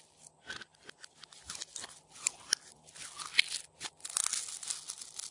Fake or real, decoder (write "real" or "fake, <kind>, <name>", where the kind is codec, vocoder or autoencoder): real